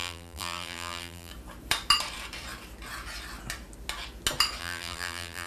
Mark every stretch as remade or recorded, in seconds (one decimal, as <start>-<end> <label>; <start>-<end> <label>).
0.0-1.3 remade; 1.3-4.6 recorded; 4.6-5.5 remade